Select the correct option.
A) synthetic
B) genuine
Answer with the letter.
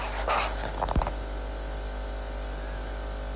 B